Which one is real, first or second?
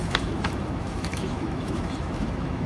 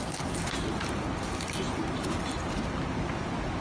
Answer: second